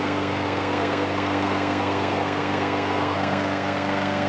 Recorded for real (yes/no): no